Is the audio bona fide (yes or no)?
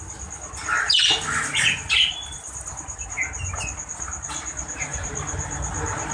yes